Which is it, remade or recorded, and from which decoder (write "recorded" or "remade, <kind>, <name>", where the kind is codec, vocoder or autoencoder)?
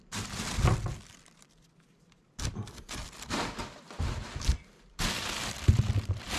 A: remade, vocoder, BigVGAN v2